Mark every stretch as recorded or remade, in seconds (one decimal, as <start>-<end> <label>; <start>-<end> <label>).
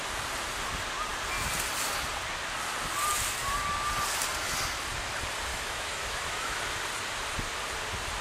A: 0.0-5.5 recorded; 5.5-6.6 remade; 6.6-8.2 recorded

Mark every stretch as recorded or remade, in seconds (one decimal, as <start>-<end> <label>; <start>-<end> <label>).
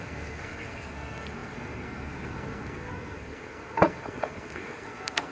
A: 0.0-5.3 remade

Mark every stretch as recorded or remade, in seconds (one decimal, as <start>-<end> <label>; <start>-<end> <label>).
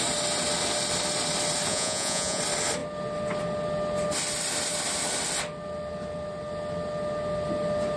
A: 0.0-1.7 recorded; 1.7-2.4 remade; 2.4-8.0 recorded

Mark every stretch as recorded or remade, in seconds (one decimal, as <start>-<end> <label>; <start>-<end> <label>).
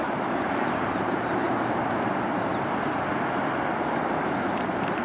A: 0.0-2.5 remade; 2.5-4.1 recorded; 4.1-5.0 remade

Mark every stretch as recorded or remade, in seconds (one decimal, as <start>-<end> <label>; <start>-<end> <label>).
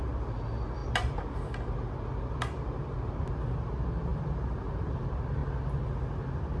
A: 0.0-6.6 recorded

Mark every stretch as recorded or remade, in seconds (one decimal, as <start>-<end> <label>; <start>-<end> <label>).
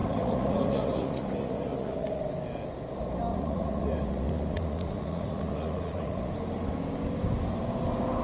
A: 0.0-2.2 remade; 2.2-3.3 recorded; 3.3-6.3 remade; 6.3-8.2 recorded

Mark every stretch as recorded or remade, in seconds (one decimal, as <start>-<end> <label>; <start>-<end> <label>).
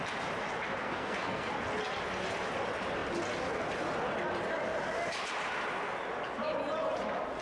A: 0.0-0.8 recorded; 0.8-1.5 remade; 1.5-7.4 recorded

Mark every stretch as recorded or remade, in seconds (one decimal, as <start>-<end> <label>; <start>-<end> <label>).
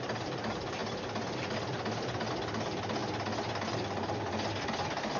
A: 0.0-5.2 recorded